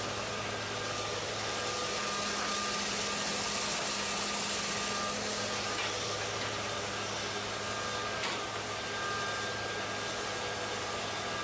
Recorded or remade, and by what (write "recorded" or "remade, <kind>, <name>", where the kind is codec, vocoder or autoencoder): recorded